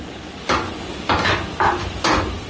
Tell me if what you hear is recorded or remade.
recorded